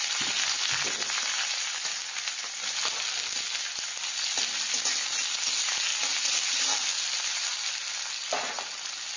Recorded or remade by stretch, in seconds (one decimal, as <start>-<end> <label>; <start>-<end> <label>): 0.0-9.2 recorded